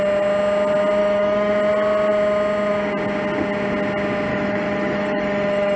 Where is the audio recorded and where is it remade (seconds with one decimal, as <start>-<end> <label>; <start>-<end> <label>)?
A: 0.0-1.0 recorded; 1.0-1.5 remade; 1.5-4.3 recorded; 4.3-5.8 remade